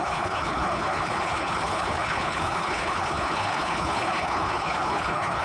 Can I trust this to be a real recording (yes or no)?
no